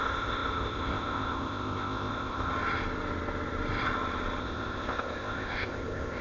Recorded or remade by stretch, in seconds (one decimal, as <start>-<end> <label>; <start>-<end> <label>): 0.0-2.5 remade; 2.5-4.4 recorded; 4.4-6.2 remade

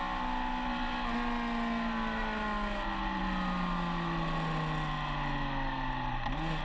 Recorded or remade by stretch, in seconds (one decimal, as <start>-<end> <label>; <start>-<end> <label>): 0.0-6.6 recorded

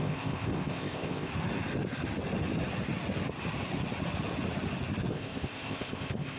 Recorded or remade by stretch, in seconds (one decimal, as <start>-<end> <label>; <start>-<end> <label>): 0.0-1.3 remade; 1.3-5.1 recorded; 5.1-6.4 remade

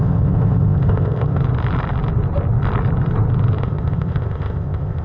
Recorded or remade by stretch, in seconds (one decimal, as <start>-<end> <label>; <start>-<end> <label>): 0.0-1.4 remade; 1.4-3.6 recorded; 3.6-5.0 remade

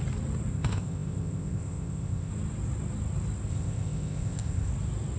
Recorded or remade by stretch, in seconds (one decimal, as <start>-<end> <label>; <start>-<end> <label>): 0.0-0.5 recorded; 0.5-2.3 remade; 2.3-3.5 recorded; 3.5-4.7 remade; 4.7-5.2 recorded